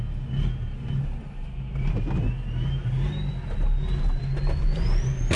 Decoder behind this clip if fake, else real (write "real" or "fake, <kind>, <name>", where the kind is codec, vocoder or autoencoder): real